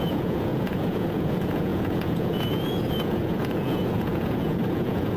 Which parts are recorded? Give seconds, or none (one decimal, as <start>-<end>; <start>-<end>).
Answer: none